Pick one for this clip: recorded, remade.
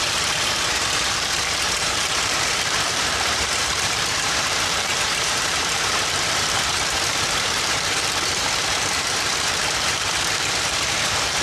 remade